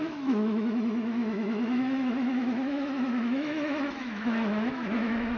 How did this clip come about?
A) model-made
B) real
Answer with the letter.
A